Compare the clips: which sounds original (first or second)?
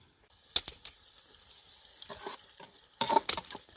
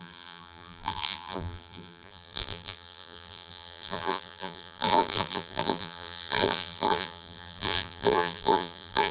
first